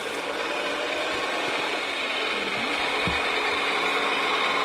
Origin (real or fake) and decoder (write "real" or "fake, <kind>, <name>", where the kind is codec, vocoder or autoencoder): real